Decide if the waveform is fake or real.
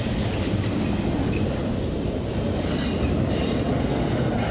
real